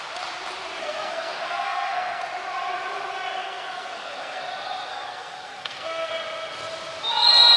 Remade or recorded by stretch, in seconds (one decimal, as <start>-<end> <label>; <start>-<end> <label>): 0.0-0.8 recorded; 0.8-2.2 remade; 2.2-3.4 recorded; 3.4-4.4 remade; 4.4-4.9 recorded; 4.9-6.1 remade; 6.1-7.6 recorded